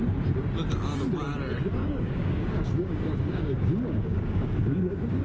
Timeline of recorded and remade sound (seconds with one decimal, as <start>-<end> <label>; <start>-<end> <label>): 0.0-1.8 recorded; 1.8-5.2 remade